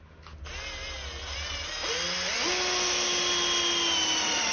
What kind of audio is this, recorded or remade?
recorded